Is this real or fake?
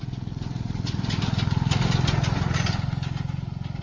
real